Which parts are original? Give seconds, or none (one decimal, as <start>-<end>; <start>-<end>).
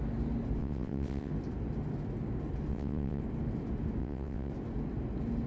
0.0-0.6; 1.3-2.7; 3.2-4.0; 4.5-5.5